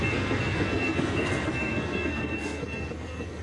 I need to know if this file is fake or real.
fake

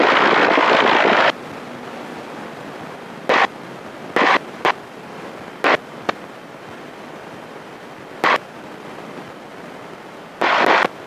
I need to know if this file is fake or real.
real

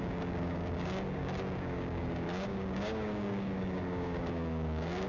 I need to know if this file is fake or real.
fake